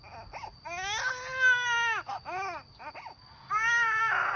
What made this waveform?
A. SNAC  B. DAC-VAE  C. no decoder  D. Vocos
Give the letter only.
C